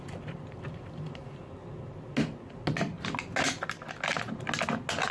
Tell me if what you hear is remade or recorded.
recorded